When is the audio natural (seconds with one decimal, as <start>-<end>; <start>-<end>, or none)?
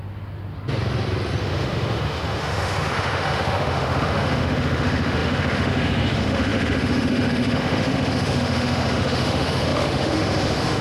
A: 0.0-1.4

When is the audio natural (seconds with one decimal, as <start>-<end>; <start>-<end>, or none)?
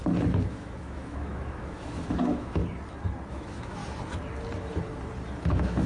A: 0.0-0.5; 2.6-3.3; 3.8-5.5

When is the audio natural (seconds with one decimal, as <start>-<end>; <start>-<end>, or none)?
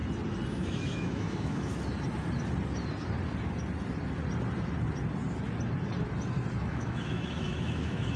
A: 0.0-0.5; 1.7-6.6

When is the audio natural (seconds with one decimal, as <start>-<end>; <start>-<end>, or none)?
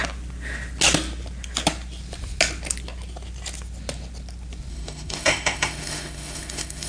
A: 0.0-4.7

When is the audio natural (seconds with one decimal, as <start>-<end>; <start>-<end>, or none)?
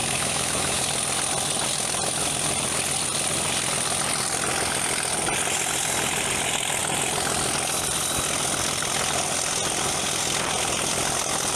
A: 0.8-11.6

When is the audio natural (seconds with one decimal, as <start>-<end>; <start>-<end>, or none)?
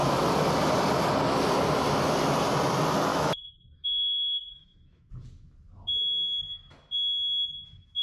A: 0.0-3.1; 5.1-8.0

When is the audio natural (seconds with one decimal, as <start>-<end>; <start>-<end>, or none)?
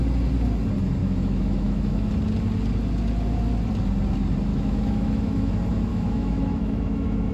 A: 0.0-1.0; 2.1-4.5; 5.5-5.9